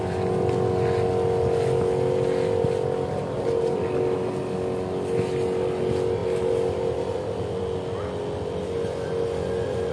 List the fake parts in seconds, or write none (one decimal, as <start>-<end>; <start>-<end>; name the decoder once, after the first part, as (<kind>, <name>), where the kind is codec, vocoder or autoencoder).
none